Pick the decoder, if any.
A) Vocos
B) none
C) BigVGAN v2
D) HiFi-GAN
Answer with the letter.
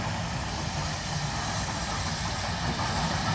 B